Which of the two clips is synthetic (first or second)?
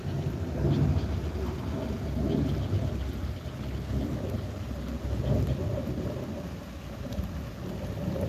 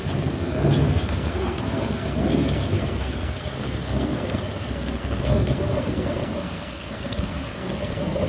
second